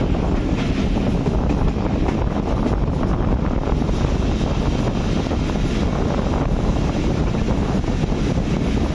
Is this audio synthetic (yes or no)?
no